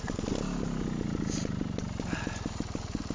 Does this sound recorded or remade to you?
recorded